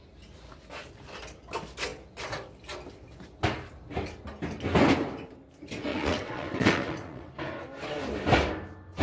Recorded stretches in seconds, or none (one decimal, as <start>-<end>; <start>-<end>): 0.0-5.9; 7.3-9.0